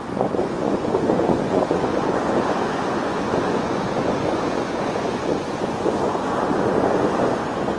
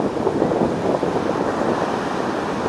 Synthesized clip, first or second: first